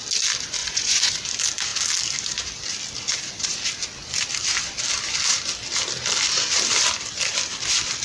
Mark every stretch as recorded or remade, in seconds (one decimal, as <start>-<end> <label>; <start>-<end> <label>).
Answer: 0.0-0.6 recorded; 0.6-1.1 remade; 1.1-8.0 recorded